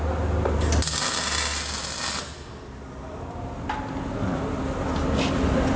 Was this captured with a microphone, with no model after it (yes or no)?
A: yes